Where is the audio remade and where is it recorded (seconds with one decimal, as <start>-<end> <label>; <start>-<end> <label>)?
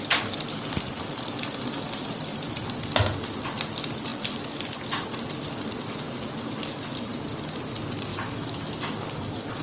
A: 0.0-8.1 recorded; 8.1-8.7 remade; 8.7-9.6 recorded